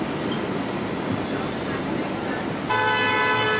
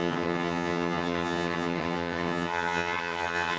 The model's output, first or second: second